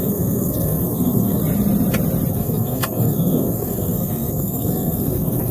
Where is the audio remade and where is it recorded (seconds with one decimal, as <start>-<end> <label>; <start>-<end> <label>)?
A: 0.0-1.4 remade; 1.4-2.3 recorded; 2.3-5.5 remade